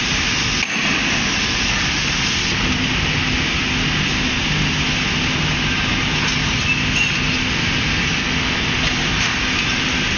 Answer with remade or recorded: recorded